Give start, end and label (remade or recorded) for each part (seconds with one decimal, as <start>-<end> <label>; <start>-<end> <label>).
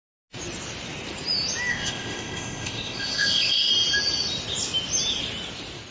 0.0-1.7 recorded; 1.7-3.7 remade; 3.7-5.9 recorded